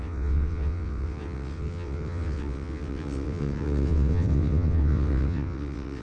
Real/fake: fake